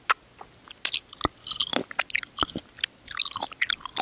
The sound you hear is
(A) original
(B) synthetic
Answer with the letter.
A